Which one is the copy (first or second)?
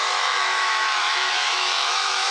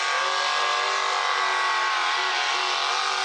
first